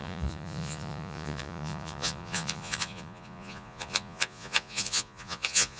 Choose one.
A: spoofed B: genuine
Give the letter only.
A